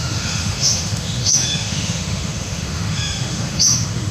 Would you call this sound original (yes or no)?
no